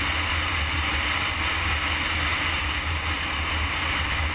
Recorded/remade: recorded